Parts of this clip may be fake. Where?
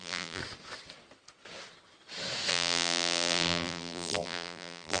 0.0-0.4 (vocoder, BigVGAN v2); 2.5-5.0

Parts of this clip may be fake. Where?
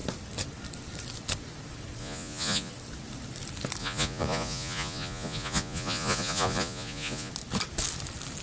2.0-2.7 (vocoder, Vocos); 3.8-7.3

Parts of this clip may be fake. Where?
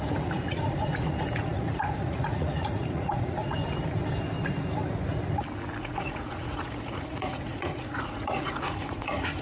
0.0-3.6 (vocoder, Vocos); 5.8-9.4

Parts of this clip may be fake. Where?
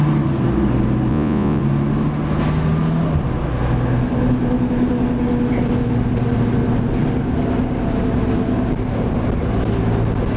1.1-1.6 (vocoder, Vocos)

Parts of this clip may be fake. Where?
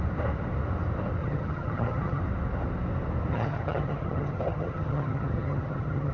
1.2-2.2 (vocoder, HiFi-GAN); 3.3-6.1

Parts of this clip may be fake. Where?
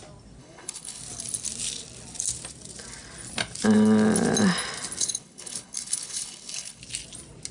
0.4-1.0 (codec, HILCodec); 5.0-6.8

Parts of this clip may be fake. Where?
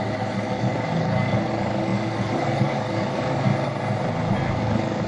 0.0-3.5 (codec, DAC); 4.5-5.1